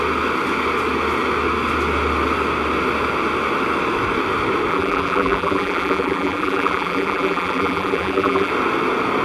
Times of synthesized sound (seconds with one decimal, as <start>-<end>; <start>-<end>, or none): 4.7-8.5